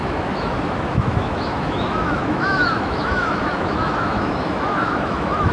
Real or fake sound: fake